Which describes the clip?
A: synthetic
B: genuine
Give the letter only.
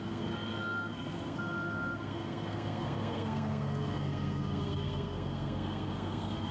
A